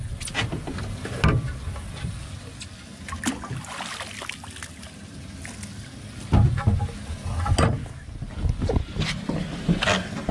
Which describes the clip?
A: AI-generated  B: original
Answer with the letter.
B